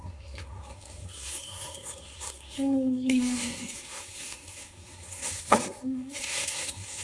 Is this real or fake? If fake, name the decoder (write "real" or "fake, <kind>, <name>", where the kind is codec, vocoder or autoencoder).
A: fake, codec, SNAC